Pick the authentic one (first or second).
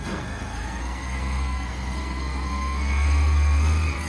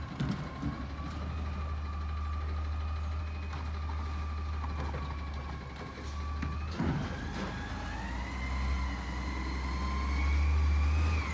second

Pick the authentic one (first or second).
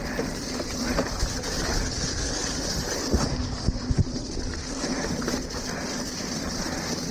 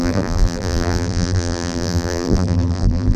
first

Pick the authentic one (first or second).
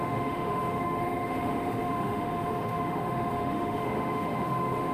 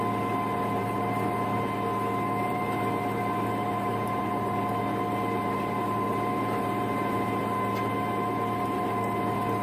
second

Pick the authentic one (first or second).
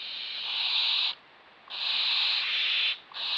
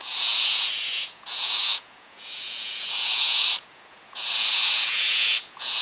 first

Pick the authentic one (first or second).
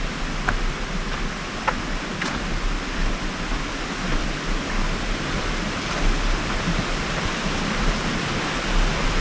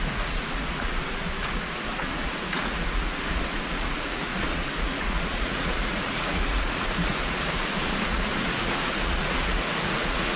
first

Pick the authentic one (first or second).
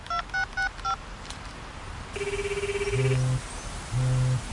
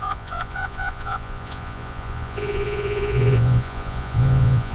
first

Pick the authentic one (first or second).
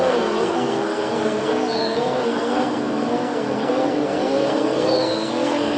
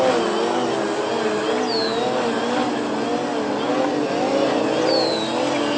second